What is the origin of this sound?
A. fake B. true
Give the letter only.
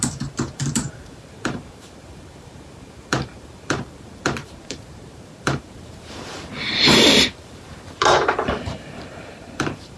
A